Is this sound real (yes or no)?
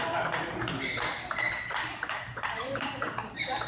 yes